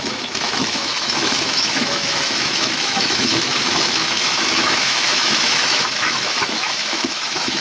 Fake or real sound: fake